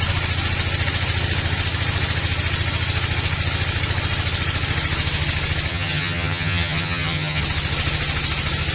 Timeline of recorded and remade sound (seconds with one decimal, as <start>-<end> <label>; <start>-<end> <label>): 0.0-5.7 recorded; 5.7-7.4 remade; 7.4-8.7 recorded